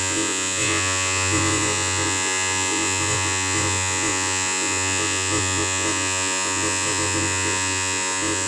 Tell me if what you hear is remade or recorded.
remade